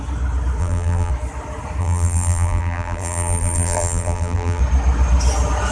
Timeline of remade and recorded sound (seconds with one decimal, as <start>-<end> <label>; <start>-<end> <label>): 0.0-0.6 recorded; 0.6-1.1 remade; 1.1-1.8 recorded; 1.8-4.6 remade; 4.6-5.7 recorded